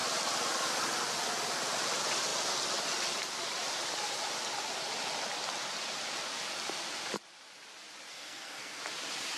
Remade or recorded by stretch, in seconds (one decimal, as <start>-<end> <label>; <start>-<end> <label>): 0.0-8.1 recorded; 8.1-8.8 remade; 8.8-9.4 recorded